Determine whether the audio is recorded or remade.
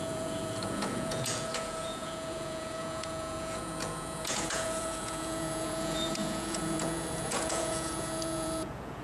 remade